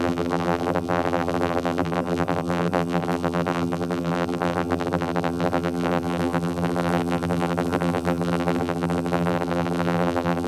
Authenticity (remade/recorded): remade